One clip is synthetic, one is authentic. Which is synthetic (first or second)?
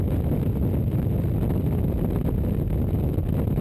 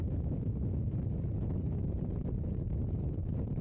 second